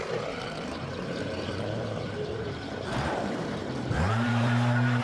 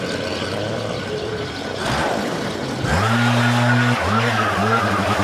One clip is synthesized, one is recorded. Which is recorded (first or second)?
second